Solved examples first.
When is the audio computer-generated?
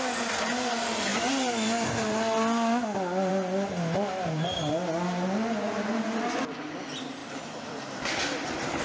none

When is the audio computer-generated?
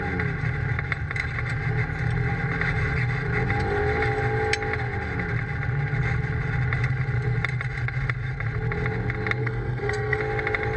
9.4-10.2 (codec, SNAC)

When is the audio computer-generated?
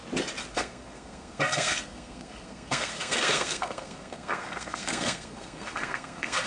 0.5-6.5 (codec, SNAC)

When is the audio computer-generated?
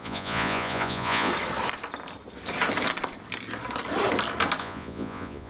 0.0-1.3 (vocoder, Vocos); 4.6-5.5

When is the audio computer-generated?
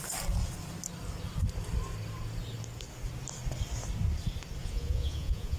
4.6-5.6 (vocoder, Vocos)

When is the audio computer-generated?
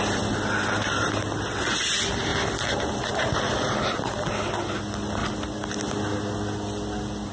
none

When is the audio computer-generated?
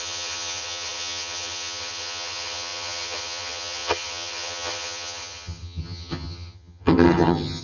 0.0-7.6 (vocoder, HiFi-GAN)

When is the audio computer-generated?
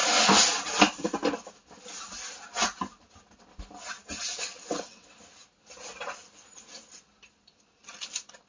4.3-5.1 (vocoder, WaveNeXt)